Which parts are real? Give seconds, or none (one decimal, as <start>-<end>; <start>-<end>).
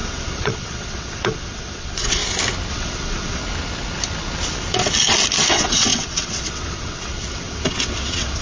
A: 2.2-2.7; 3.4-5.5